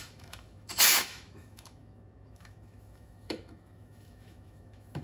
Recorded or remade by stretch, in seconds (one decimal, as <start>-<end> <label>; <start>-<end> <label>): 0.0-5.0 remade